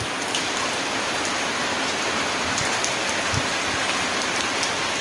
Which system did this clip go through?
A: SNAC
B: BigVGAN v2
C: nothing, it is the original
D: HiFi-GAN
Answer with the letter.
C